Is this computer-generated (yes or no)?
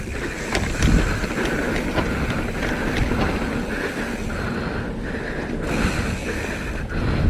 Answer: no